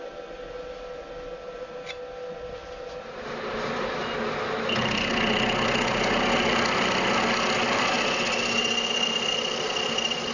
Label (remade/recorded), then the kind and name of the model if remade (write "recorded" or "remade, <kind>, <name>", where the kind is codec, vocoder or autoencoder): recorded